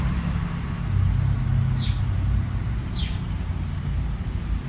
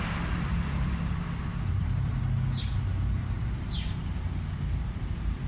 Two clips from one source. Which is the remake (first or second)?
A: second